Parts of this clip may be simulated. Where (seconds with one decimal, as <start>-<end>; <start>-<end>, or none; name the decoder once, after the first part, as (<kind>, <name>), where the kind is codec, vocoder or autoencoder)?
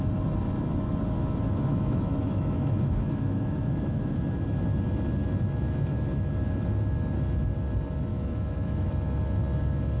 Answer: 1.7-4.2 (autoencoder, DAC-VAE); 8.1-8.9